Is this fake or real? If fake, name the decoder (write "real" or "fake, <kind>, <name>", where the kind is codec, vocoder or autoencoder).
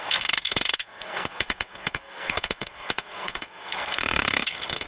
fake, codec, SNAC